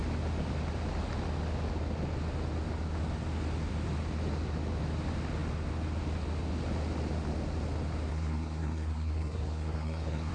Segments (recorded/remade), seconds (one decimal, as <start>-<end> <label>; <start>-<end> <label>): 0.0-8.1 recorded; 8.1-10.3 remade